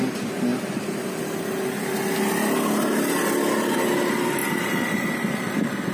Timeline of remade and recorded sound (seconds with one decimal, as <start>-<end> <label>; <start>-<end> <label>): 0.0-4.4 recorded; 4.4-5.5 remade; 5.5-5.9 recorded